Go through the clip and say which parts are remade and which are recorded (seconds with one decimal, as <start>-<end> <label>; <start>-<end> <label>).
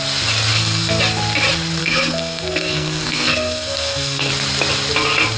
0.0-0.5 recorded; 0.5-1.0 remade; 1.0-1.8 recorded; 1.8-4.3 remade; 4.3-5.4 recorded